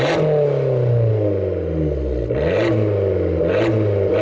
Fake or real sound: real